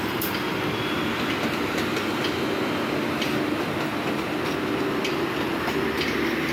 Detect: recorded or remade recorded